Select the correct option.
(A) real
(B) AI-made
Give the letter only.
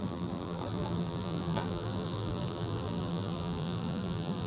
B